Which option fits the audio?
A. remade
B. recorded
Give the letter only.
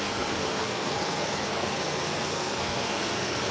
A